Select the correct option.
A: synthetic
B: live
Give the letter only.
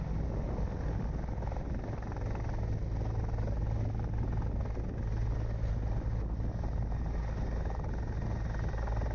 B